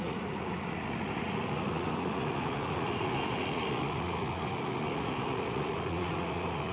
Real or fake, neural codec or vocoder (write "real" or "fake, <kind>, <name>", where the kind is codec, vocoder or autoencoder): fake, vocoder, Vocos